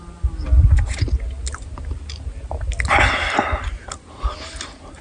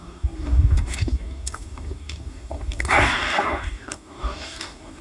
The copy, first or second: second